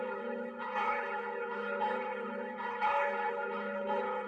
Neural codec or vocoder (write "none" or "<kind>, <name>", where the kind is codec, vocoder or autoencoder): codec, HILCodec